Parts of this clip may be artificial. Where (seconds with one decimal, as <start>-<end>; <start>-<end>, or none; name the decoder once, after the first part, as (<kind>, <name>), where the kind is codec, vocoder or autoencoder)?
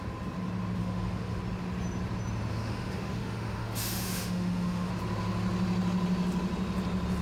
0.8-1.4 (autoencoder, DAC-VAE); 2.5-4.9